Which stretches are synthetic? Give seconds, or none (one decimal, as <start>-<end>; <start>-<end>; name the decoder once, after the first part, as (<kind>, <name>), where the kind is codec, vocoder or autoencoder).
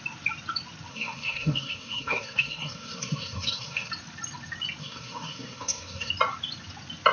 0.9-3.9 (codec, SNAC); 4.8-6.1